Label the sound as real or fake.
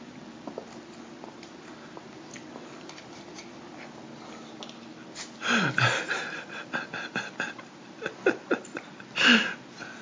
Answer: real